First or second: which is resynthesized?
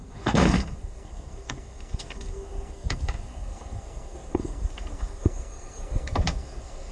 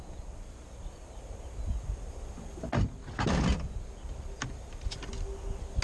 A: first